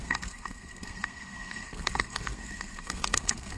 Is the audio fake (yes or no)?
yes